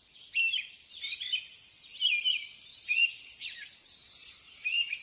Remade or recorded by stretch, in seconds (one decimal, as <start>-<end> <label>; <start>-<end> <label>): 0.0-5.0 recorded